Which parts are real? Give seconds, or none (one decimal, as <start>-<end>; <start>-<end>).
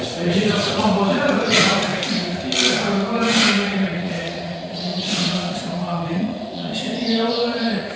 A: 1.9-3.5; 6.7-7.3